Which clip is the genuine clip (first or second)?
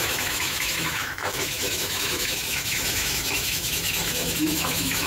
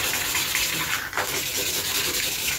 second